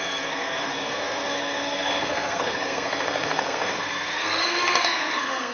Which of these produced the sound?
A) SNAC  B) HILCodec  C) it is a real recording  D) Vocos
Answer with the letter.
A